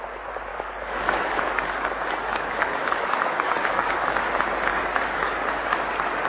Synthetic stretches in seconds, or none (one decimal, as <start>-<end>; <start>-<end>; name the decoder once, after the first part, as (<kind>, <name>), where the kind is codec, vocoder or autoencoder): 0.5-4.3 (codec, DAC); 4.7-5.5